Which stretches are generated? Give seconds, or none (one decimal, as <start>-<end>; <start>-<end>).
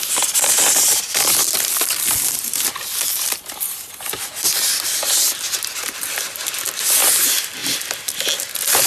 none